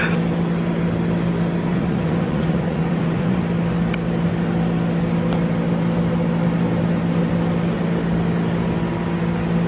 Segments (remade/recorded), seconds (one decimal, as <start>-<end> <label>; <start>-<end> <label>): 0.0-1.7 recorded; 1.7-3.4 remade; 3.4-9.7 recorded